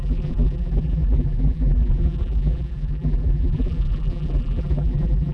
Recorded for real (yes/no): no